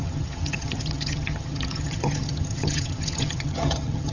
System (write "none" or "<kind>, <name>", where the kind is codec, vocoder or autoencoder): vocoder, HiFi-GAN